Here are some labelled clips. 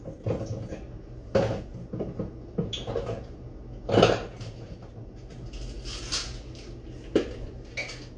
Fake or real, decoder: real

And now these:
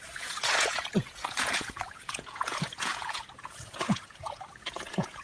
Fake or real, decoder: fake, vocoder, Vocos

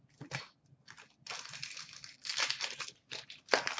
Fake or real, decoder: real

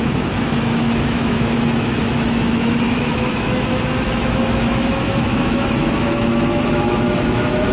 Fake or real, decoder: fake, autoencoder, DAC-VAE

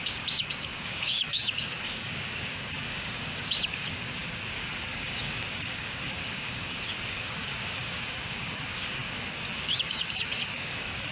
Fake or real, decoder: fake, codec, DAC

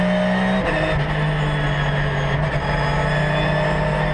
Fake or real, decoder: real